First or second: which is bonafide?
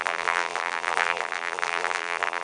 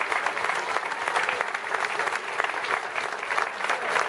second